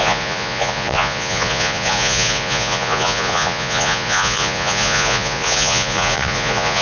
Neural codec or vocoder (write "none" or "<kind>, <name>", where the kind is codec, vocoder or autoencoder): vocoder, Vocos